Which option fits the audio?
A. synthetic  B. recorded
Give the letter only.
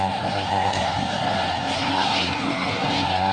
A